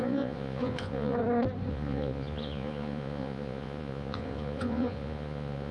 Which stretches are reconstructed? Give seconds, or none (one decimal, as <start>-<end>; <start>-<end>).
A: 0.0-1.2; 1.7-5.7